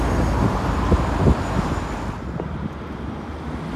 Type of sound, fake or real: real